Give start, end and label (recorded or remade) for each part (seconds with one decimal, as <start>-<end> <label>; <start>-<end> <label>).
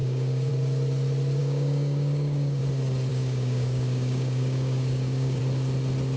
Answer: 0.0-0.5 remade; 0.5-1.4 recorded; 1.4-2.6 remade; 2.6-3.1 recorded; 3.1-5.4 remade; 5.4-6.2 recorded